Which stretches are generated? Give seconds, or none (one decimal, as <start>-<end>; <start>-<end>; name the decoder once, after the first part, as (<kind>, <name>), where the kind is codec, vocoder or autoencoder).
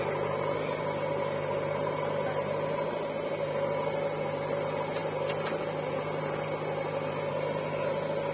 none